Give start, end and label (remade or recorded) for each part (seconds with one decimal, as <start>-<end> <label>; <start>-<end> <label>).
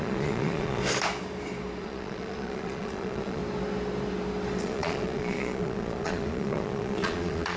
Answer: 0.0-0.8 remade; 0.8-1.8 recorded; 1.8-3.4 remade; 3.4-4.6 recorded; 4.6-7.6 remade